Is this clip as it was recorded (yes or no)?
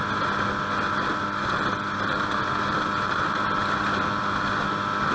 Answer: yes